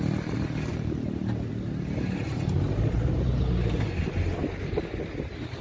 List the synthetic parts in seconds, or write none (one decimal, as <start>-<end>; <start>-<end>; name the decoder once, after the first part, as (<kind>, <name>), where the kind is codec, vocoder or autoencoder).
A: none